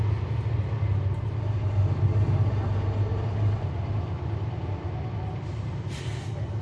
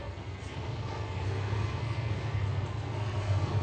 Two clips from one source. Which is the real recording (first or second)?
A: first